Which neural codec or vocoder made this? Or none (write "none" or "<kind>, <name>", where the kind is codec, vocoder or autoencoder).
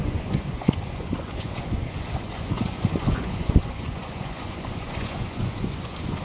vocoder, Vocos